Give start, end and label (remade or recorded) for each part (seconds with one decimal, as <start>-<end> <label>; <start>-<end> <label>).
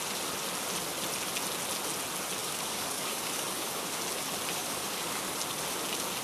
0.0-2.4 recorded; 2.4-4.0 remade; 4.0-4.6 recorded; 4.6-5.3 remade; 5.3-6.2 recorded